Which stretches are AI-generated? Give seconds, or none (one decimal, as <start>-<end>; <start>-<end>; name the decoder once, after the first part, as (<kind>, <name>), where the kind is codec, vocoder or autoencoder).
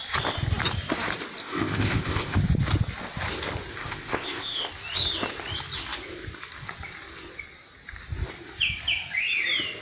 1.4-2.4 (codec, ZipCodec); 3.7-4.7